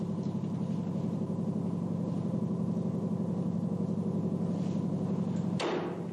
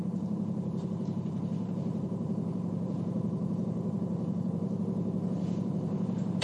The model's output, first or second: second